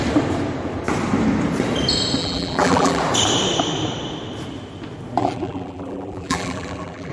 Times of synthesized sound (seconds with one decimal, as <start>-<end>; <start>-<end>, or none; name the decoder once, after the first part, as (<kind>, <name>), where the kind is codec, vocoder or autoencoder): 2.2-3.0 (vocoder, BigVGAN v2); 5.2-7.1

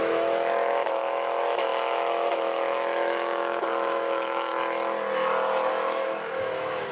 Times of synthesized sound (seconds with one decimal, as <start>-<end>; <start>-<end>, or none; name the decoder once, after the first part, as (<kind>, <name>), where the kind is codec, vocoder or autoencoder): 0.0-4.5 (autoencoder, DAC-VAE); 5.7-6.9

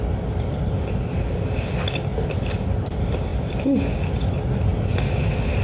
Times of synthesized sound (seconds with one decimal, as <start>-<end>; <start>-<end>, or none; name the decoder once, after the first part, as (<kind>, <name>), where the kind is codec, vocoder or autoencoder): 0.0-2.1 (vocoder, BigVGAN v2); 2.7-3.3; 4.3-4.7

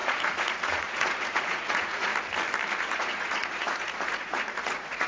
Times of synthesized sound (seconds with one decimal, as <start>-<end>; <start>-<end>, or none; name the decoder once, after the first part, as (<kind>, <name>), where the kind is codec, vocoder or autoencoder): 0.0-2.1 (vocoder, Vocos); 2.8-5.1

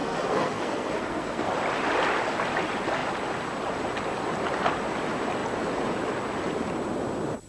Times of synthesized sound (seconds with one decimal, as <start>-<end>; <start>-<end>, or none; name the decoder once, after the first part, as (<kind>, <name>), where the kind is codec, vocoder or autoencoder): 0.0-1.5 (codec, SNAC)

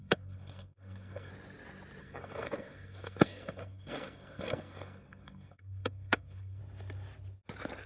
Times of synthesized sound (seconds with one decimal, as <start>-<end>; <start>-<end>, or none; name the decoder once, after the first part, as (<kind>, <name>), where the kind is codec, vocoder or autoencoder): 0.0-1.3 (codec, SNAC); 2.0-6.6